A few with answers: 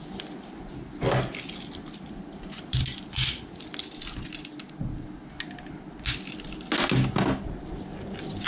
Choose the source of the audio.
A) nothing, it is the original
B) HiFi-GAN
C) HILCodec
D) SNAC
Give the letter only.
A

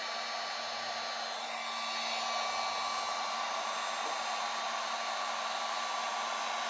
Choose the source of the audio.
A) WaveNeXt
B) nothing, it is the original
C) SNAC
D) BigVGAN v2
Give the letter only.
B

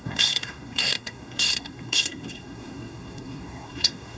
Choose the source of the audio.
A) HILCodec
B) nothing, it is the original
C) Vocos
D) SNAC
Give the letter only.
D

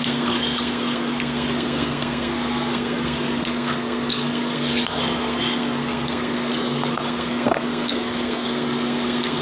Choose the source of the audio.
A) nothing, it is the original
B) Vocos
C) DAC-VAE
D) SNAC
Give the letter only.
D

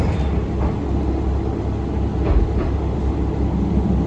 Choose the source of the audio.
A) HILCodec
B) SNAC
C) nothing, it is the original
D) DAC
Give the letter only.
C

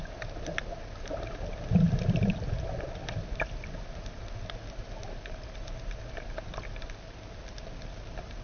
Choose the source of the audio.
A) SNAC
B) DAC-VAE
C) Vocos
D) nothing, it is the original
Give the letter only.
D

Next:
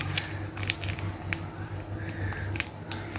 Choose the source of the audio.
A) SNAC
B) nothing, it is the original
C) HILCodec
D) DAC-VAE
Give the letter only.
B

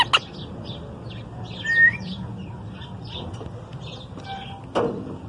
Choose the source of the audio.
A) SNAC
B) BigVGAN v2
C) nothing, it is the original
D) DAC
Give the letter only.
C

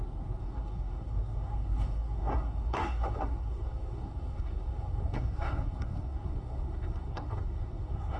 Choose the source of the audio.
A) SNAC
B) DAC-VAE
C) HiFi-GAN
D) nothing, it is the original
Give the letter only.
A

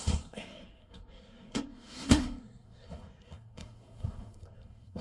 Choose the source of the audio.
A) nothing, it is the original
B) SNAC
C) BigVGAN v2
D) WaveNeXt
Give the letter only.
B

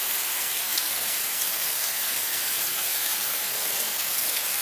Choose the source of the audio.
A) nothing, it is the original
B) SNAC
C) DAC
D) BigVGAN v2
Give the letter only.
B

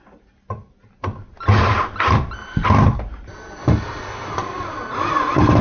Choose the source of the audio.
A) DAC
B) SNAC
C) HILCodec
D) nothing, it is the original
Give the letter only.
D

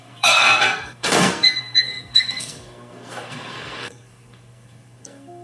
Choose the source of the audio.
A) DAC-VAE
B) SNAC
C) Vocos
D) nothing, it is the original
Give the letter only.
B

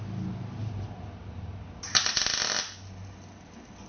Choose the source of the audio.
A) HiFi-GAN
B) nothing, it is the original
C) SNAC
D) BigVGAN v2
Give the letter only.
B